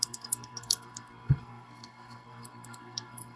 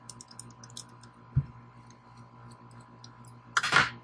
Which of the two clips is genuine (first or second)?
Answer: second